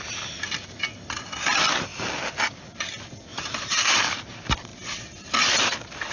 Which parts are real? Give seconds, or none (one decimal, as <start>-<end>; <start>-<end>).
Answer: 0.0-3.3; 4.0-6.1